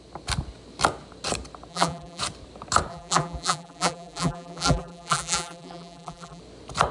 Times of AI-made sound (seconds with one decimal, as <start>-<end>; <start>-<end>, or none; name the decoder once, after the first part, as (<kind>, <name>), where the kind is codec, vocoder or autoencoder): 1.7-2.2 (vocoder, BigVGAN v2); 2.9-6.4